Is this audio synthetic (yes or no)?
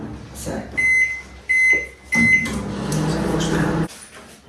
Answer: no